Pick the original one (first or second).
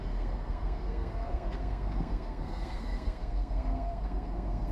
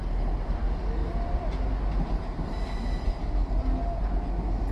second